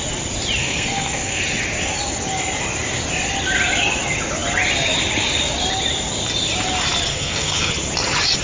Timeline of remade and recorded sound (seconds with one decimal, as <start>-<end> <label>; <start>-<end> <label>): 0.0-0.6 recorded; 0.6-1.4 remade; 1.4-7.1 recorded; 7.1-7.7 remade; 7.7-8.4 recorded